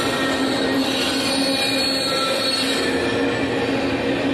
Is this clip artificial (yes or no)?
no